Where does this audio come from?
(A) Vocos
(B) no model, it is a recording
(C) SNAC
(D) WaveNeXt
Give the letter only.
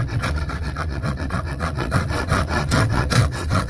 D